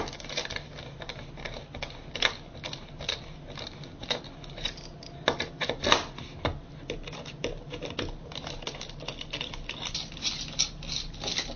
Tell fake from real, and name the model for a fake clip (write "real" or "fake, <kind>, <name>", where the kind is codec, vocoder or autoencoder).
real